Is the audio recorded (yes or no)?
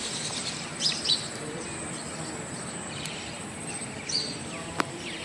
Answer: no